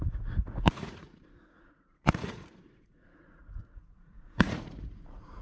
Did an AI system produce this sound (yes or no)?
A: yes